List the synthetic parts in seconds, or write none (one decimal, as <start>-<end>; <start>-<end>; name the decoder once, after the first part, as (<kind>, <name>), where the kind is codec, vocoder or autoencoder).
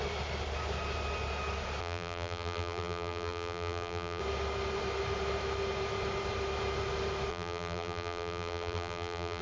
1.8-4.2 (vocoder, BigVGAN v2); 7.3-9.4